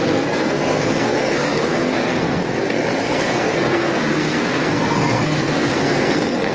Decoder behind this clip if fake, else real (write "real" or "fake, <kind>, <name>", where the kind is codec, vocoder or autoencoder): fake, codec, SNAC